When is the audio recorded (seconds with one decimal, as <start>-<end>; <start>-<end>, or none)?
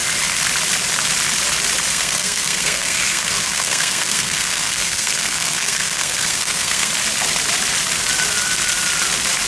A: 0.0-1.9; 6.9-9.5